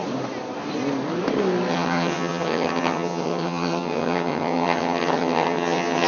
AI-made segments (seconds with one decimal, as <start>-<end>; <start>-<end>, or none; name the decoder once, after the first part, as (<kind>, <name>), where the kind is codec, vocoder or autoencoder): 1.7-6.1 (vocoder, HiFi-GAN)